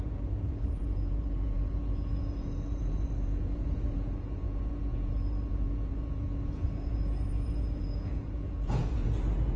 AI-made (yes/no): yes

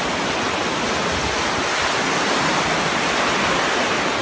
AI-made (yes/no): no